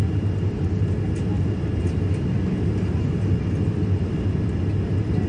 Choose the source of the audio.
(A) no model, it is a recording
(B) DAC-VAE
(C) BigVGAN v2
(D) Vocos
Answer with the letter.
A